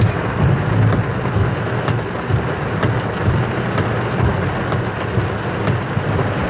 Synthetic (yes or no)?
no